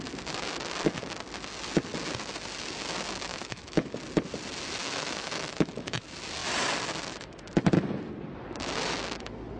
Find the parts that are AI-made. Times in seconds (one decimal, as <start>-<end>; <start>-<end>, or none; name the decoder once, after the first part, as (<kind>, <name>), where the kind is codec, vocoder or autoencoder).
3.3-4.0 (autoencoder, DAC-VAE); 4.8-6.0